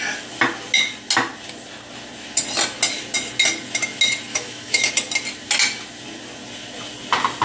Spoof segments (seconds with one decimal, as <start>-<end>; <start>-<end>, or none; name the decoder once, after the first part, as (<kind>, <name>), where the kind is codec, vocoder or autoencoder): 4.3-4.9 (autoencoder, DAC-VAE)